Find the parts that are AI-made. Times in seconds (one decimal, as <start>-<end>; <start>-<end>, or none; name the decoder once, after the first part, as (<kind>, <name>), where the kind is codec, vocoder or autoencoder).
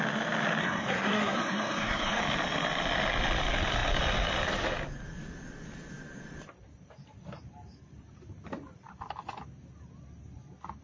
0.6-2.2 (codec, SNAC)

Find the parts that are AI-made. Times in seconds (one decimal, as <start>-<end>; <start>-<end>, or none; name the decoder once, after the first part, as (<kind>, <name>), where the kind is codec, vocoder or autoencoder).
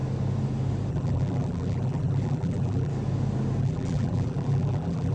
0.9-2.9 (vocoder, BigVGAN v2); 3.6-5.1